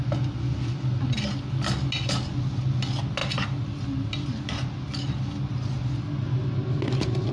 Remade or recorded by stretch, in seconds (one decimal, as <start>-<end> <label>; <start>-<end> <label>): 0.0-7.3 recorded